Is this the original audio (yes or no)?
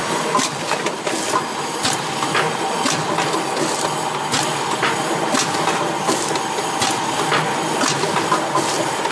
yes